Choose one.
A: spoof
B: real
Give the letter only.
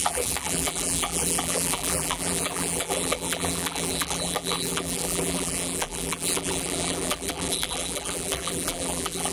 A